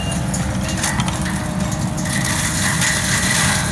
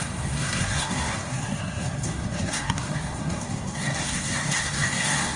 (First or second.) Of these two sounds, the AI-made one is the second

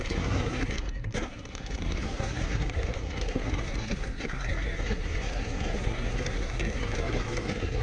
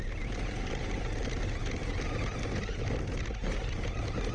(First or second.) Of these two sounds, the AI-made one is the first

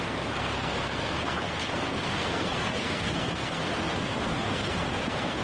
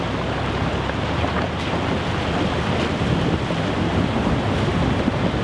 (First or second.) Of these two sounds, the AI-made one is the first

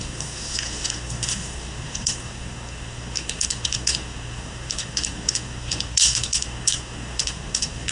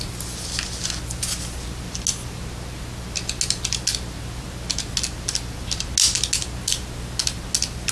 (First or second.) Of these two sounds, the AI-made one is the first